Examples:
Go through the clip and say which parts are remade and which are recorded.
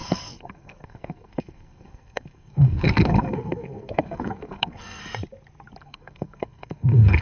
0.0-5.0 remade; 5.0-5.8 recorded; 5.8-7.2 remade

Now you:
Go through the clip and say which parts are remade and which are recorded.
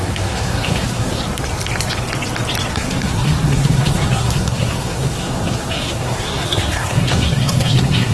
0.0-1.2 remade; 1.2-2.7 recorded; 2.7-8.1 remade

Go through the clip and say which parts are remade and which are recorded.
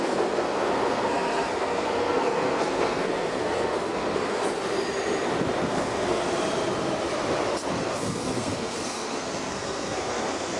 0.0-4.4 remade; 4.4-5.6 recorded; 5.6-6.2 remade; 6.2-7.7 recorded; 7.7-10.6 remade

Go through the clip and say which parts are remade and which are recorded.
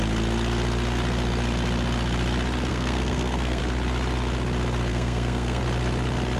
0.0-2.7 recorded; 2.7-3.6 remade; 3.6-4.9 recorded; 4.9-5.6 remade; 5.6-6.4 recorded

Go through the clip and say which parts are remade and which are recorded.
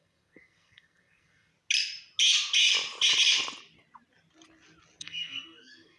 0.0-1.5 remade; 1.5-5.0 recorded; 5.0-6.0 remade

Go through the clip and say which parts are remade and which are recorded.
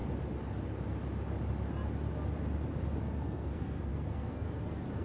0.0-3.0 recorded; 3.0-5.0 remade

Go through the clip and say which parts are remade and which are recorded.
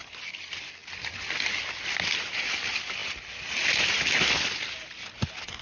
0.0-5.6 recorded